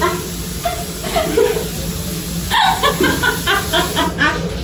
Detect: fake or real real